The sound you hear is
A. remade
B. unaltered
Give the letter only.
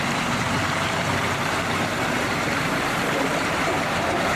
A